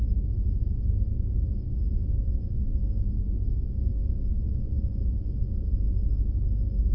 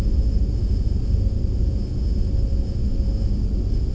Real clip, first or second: second